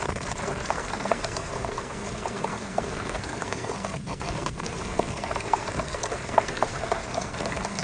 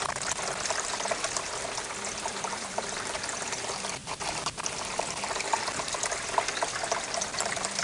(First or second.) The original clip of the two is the second